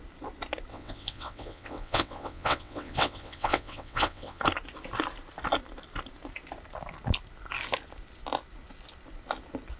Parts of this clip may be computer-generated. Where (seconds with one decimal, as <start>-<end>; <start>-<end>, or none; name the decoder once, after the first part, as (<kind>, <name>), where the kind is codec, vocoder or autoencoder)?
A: 0.7-4.4 (vocoder, WaveNeXt)